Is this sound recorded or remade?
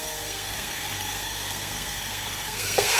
remade